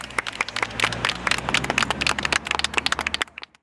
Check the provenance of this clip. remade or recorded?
recorded